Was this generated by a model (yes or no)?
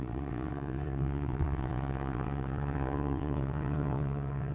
yes